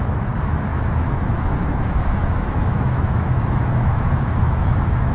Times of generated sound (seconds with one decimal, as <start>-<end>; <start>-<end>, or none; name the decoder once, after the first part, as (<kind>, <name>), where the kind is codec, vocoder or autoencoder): 0.0-5.1 (autoencoder, DAC-VAE)